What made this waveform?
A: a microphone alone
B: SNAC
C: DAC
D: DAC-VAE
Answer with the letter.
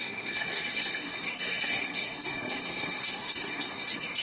B